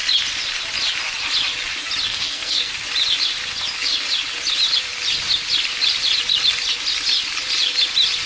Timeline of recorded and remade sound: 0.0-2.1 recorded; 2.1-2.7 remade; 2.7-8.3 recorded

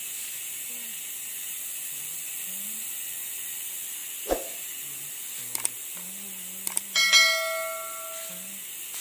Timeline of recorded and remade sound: 0.0-9.0 recorded

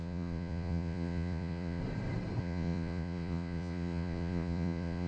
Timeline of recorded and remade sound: 0.0-1.8 remade; 1.8-2.4 recorded; 2.4-5.1 remade

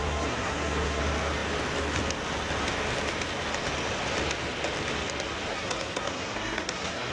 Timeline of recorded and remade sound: 0.0-1.0 remade; 1.0-5.5 recorded; 5.5-7.1 remade

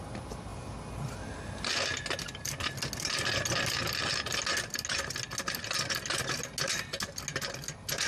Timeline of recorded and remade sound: 0.0-8.1 recorded

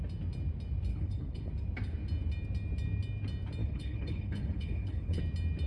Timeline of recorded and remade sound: 0.0-0.9 recorded; 0.9-1.5 remade; 1.5-3.6 recorded; 3.6-5.2 remade; 5.2-5.7 recorded